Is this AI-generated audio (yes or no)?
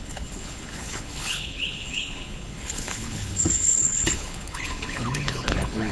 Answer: yes